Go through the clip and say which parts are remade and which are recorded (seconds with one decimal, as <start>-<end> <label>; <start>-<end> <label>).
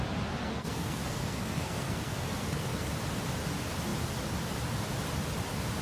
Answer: 0.0-0.4 recorded; 0.4-2.9 remade; 2.9-5.8 recorded